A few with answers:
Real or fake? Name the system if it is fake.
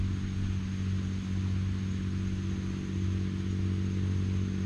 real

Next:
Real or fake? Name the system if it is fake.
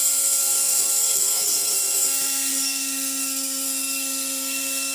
fake, codec, SNAC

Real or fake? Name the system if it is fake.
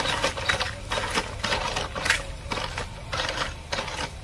real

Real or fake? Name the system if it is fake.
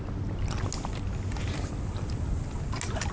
real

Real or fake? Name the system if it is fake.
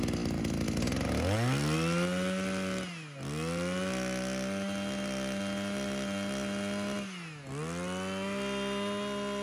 real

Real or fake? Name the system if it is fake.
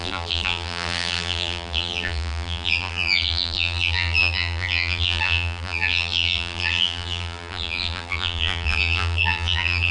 fake, vocoder, BigVGAN v2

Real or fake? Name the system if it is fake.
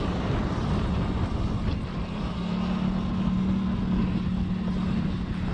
real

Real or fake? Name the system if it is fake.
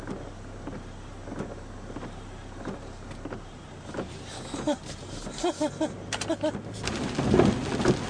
real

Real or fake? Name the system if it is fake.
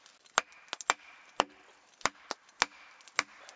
real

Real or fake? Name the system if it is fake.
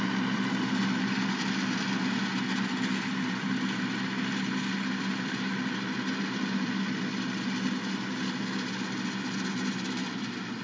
real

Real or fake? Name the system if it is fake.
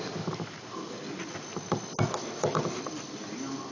real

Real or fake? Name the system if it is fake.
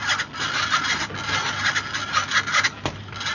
real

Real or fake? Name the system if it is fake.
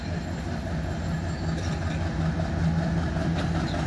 real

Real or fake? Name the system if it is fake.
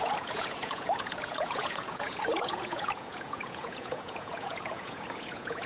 fake, vocoder, Vocos